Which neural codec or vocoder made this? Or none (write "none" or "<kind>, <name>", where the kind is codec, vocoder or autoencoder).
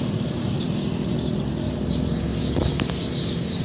vocoder, BigVGAN v2